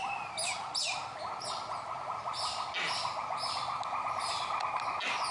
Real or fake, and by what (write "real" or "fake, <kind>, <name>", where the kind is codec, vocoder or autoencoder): real